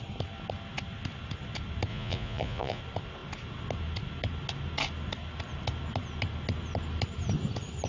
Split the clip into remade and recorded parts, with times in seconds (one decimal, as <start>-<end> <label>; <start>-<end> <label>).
0.0-1.9 recorded; 1.9-2.8 remade; 2.8-7.9 recorded